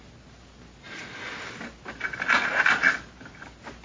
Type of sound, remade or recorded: recorded